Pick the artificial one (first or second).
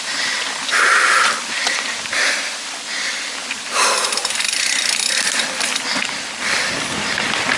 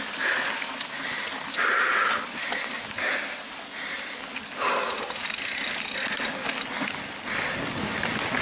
first